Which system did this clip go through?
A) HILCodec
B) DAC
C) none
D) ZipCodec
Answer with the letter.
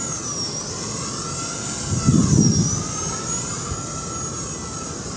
C